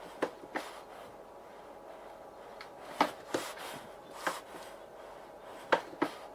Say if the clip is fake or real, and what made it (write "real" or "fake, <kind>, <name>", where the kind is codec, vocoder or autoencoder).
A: real